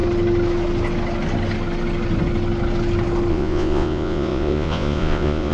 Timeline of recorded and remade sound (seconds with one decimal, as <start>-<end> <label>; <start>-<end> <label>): 0.0-3.3 recorded; 3.3-5.5 remade